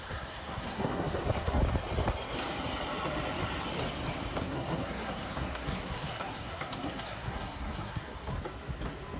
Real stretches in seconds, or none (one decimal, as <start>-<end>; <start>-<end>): 1.6-4.4; 8.3-9.2